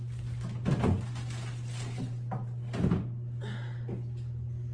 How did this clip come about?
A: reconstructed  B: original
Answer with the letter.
B